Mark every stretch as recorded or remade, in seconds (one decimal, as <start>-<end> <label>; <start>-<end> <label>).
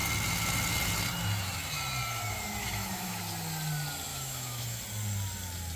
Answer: 0.0-2.6 recorded; 2.6-3.2 remade; 3.2-4.1 recorded; 4.1-4.8 remade; 4.8-5.8 recorded